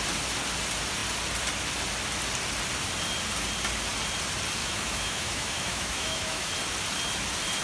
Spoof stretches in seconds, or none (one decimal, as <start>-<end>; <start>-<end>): 4.6-6.5